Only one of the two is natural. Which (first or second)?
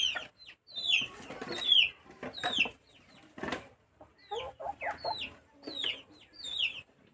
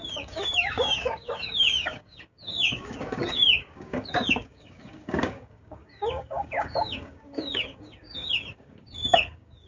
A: first